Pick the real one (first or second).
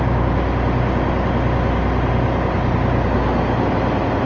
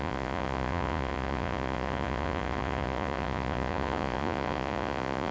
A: first